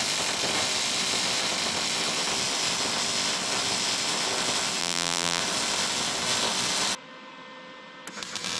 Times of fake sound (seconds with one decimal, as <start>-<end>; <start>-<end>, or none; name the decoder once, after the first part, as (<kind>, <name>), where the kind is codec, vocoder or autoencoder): 4.8-5.4 (vocoder, BigVGAN v2)